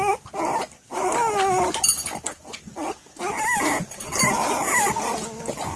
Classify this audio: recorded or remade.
recorded